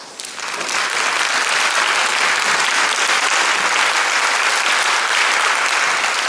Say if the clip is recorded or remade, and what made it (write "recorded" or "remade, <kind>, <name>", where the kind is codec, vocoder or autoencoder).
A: recorded